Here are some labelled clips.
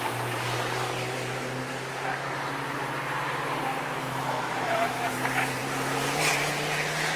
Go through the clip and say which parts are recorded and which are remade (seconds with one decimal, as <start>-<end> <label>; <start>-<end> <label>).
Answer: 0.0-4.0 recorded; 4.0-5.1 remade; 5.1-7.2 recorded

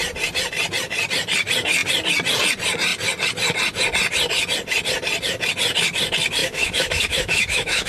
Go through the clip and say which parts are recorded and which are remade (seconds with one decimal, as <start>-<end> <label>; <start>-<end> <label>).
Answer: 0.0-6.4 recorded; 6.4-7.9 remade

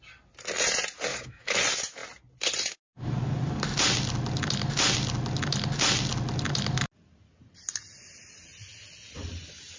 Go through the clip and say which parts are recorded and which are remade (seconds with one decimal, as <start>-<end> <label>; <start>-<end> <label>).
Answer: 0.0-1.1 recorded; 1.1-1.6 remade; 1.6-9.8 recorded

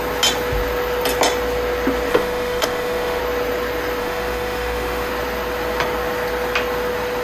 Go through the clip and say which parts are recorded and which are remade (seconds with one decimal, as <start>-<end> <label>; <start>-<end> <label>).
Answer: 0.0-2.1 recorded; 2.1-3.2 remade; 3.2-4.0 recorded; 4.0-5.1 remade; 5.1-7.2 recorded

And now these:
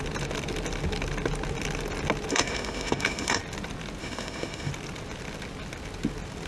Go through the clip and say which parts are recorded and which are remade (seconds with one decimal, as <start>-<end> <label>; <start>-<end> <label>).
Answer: 0.0-2.3 recorded; 2.3-3.4 remade; 3.4-4.0 recorded; 4.0-4.7 remade; 4.7-6.5 recorded